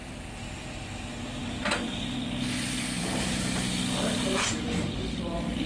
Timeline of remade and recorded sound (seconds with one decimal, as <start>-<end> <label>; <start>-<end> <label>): 0.0-5.7 recorded